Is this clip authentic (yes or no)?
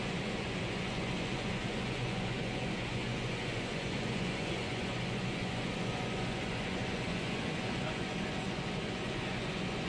no